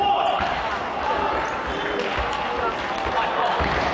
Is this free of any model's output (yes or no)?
yes